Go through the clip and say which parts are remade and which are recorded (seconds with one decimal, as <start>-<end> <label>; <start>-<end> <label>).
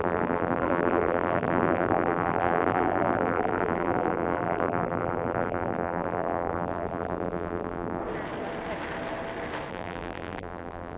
0.0-8.0 remade; 8.0-9.7 recorded; 9.7-11.0 remade